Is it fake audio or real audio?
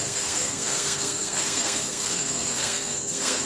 fake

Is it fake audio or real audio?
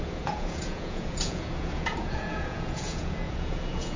fake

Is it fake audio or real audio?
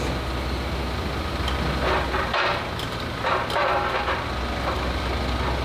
real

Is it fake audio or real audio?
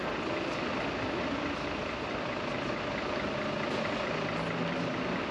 real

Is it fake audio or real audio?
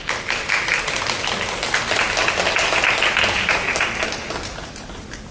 real